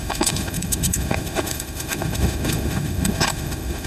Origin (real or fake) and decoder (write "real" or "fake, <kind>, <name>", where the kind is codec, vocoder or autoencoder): fake, autoencoder, DAC-VAE